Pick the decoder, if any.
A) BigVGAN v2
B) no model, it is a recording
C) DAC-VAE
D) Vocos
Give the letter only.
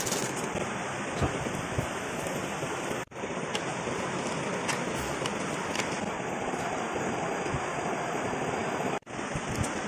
B